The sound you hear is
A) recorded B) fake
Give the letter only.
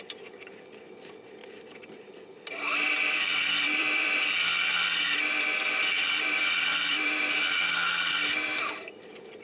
B